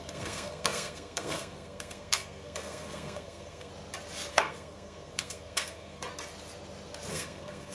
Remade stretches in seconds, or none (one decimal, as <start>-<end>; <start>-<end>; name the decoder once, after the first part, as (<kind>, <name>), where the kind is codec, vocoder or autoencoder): 0.0-3.7 (codec, SNAC); 4.3-6.1; 7.1-7.7